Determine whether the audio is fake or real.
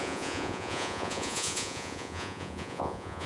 fake